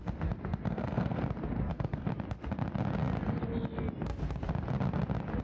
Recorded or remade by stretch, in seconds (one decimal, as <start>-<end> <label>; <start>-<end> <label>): 0.0-0.7 recorded; 0.7-1.2 remade; 1.2-1.7 recorded; 1.7-2.1 remade; 2.1-5.4 recorded